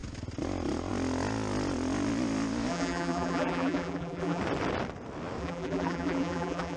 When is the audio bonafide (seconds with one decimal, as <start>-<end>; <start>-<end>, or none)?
0.0-2.7; 4.4-5.4